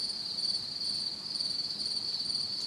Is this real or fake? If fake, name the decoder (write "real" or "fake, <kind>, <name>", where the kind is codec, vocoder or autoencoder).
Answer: fake, vocoder, BigVGAN v2